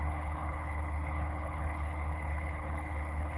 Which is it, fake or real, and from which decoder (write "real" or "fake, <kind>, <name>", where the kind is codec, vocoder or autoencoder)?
fake, codec, HILCodec